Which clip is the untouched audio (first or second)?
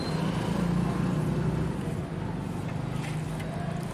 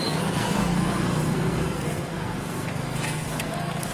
first